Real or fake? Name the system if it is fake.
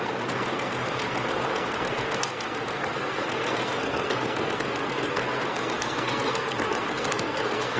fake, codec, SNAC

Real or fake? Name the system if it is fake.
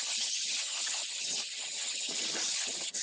fake, vocoder, HiFi-GAN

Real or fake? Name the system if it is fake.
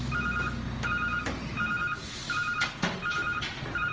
real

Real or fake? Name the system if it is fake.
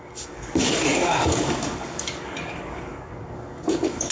fake, codec, DAC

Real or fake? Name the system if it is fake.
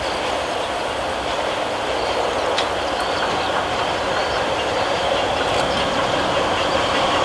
real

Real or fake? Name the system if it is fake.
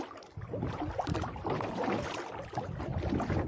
real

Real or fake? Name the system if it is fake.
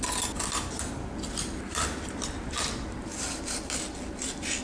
real